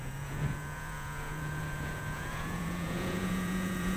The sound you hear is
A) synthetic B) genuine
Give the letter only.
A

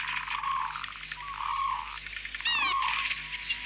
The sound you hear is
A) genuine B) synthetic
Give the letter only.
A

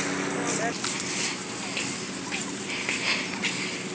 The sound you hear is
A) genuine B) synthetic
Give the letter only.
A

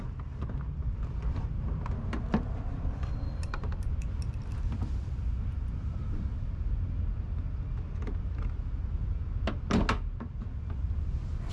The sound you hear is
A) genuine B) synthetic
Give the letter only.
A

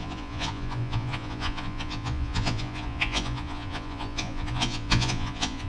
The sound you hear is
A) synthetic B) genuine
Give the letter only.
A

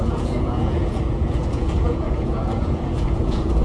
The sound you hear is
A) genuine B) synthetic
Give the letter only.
B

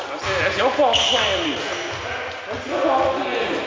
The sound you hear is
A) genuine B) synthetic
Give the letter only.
A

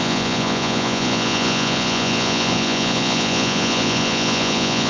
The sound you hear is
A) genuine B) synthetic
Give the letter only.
B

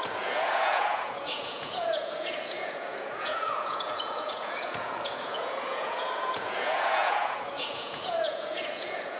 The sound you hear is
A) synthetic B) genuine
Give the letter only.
A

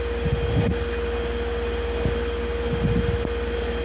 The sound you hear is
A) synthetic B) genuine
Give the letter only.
B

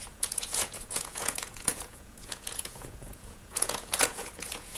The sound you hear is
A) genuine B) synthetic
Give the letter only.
B